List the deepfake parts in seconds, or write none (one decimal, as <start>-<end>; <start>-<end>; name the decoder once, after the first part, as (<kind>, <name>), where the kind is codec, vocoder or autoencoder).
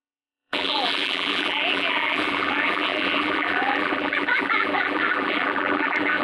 0.0-6.2 (vocoder, BigVGAN v2)